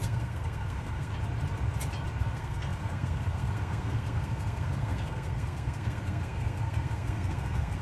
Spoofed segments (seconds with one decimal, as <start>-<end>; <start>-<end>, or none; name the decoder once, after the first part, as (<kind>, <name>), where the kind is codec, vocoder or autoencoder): 0.0-1.1 (codec, SNAC); 2.2-7.8

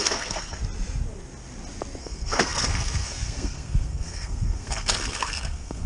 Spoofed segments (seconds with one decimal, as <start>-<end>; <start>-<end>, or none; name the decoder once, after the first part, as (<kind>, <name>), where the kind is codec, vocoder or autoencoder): 0.0-0.6 (codec, SNAC); 2.0-5.9

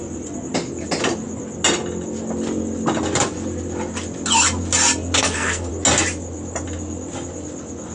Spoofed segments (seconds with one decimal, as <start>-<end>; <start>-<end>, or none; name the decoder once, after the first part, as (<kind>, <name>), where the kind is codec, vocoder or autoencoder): 5.2-5.7 (codec, SNAC)